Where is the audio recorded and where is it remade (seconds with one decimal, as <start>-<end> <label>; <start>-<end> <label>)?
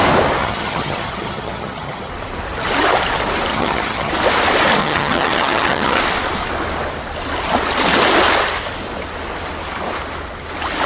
0.0-0.4 recorded; 0.4-2.1 remade; 2.1-3.5 recorded; 3.5-4.1 remade; 4.1-4.8 recorded; 4.8-6.0 remade; 6.0-10.9 recorded